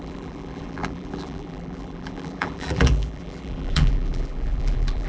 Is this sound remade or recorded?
remade